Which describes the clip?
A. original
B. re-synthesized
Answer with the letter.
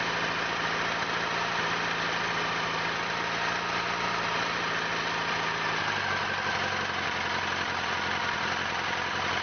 A